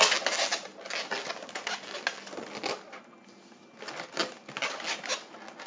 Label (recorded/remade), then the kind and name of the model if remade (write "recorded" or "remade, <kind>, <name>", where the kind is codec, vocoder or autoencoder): recorded